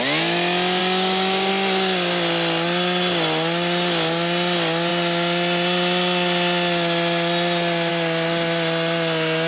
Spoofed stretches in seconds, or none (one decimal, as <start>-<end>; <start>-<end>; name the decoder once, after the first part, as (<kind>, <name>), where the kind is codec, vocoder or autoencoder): 0.8-1.5 (codec, DAC)